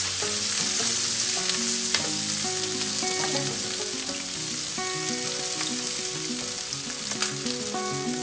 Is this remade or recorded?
recorded